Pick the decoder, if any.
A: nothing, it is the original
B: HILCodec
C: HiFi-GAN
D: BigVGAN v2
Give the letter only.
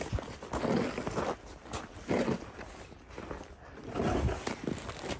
A